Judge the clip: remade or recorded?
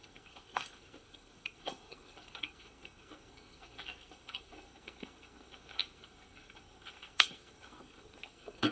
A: remade